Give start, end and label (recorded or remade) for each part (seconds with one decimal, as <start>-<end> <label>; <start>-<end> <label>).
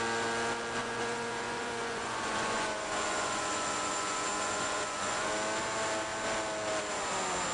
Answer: 0.0-0.8 recorded; 0.8-5.3 remade; 5.3-7.5 recorded